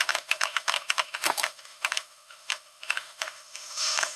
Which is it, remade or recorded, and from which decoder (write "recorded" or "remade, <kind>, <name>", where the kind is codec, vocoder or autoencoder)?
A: remade, autoencoder, DAC-VAE